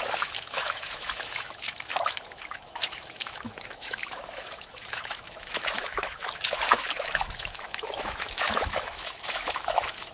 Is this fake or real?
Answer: fake